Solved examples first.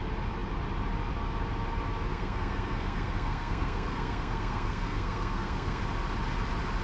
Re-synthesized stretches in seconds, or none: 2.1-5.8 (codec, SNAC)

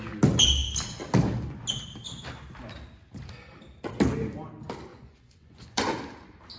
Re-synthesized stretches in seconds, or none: 4.9-6.0 (vocoder, Vocos)

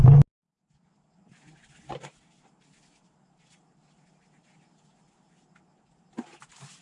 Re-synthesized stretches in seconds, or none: none

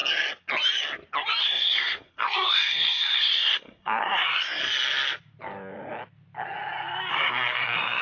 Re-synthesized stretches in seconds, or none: 1.4-4.6 (codec, SNAC); 7.1-8.0

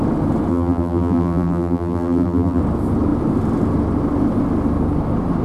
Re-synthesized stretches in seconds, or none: 0.5-2.6 (vocoder, BigVGAN v2)

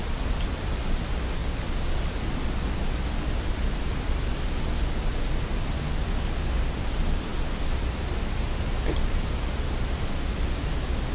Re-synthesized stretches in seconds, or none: none

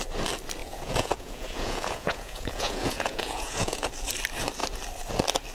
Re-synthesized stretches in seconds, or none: 0.6-3.9 (vocoder, Vocos)

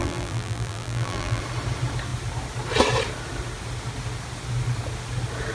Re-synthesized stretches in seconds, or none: 0.0-1.4 (vocoder, BigVGAN v2)